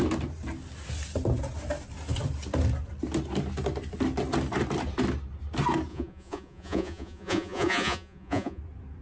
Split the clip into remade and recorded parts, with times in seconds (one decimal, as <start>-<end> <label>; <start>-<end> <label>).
0.0-5.9 recorded; 5.9-8.6 remade; 8.6-9.0 recorded